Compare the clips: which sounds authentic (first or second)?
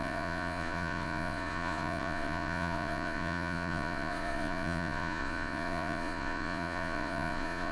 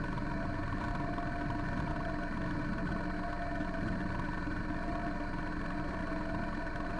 second